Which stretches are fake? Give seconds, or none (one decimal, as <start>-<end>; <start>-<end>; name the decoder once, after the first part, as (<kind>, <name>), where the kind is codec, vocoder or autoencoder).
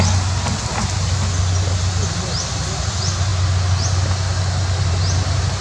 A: none